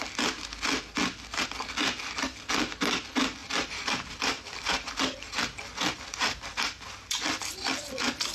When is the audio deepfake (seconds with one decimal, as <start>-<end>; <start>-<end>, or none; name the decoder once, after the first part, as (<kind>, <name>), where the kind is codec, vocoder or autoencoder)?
3.4-4.9 (vocoder, BigVGAN v2)

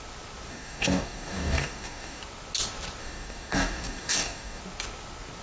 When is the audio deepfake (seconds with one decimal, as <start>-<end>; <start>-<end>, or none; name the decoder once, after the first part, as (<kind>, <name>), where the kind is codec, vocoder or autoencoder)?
0.5-2.2 (codec, DAC); 3.0-4.6

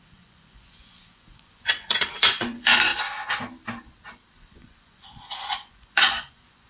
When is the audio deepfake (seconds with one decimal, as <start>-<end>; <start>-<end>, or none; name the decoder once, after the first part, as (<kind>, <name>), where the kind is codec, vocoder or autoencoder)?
0.0-2.9 (vocoder, Vocos); 4.3-6.7

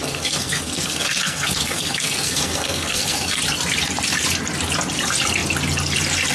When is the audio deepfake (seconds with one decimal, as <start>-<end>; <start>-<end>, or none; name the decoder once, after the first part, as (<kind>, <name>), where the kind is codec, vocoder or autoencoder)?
0.0-3.4 (codec, SNAC)